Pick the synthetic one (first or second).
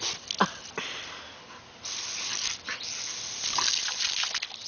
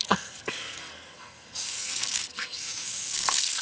second